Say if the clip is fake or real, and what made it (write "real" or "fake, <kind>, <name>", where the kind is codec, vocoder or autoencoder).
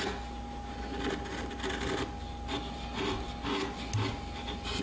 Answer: real